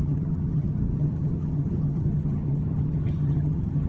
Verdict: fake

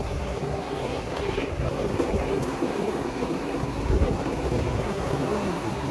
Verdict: fake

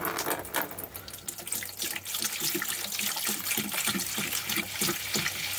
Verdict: real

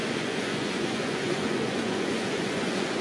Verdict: fake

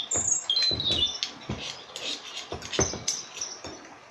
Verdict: real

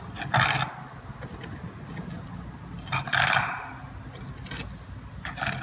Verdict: real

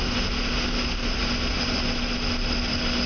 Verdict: real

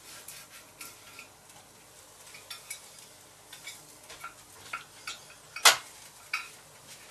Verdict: real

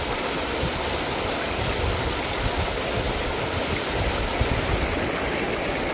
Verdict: real